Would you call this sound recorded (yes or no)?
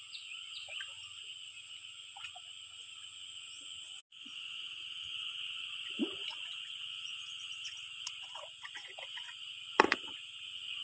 no